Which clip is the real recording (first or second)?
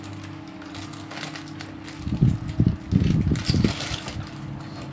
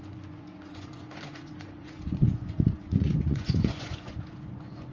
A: first